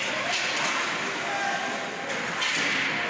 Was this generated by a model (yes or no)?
no